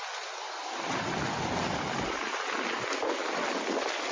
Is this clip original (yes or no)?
yes